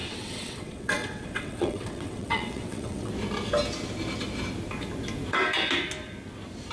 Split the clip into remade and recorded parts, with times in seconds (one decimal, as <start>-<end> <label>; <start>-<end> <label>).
0.0-3.1 remade; 3.1-6.7 recorded

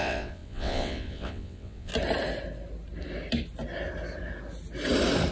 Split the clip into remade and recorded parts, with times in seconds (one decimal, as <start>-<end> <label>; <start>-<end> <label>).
0.0-1.9 remade; 1.9-5.3 recorded